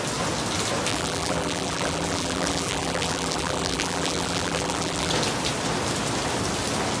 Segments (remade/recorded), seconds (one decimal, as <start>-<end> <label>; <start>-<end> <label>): 0.0-0.9 recorded; 0.9-5.1 remade; 5.1-7.0 recorded